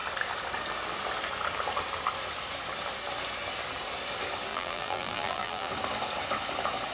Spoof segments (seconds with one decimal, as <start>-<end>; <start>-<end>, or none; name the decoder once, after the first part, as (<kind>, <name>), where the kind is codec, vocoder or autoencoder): 4.5-5.7 (vocoder, BigVGAN v2)